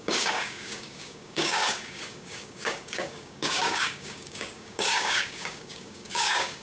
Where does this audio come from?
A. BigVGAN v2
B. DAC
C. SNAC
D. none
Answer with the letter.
B